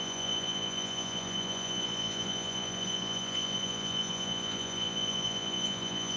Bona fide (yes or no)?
no